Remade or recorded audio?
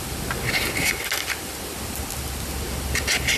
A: recorded